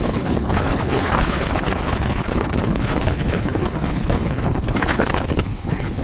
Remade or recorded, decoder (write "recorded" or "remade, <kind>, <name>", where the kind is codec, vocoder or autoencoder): remade, codec, HILCodec